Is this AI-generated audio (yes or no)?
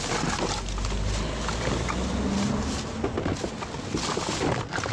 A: no